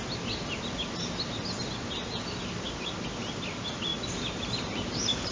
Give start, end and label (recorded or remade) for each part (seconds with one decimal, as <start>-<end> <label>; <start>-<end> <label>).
0.0-3.9 recorded; 3.9-5.3 remade